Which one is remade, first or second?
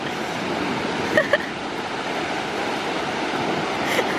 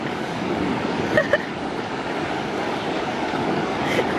second